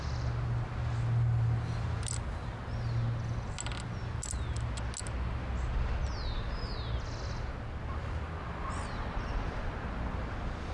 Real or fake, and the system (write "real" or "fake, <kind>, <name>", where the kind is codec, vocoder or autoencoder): real